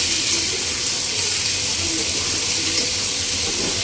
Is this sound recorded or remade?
recorded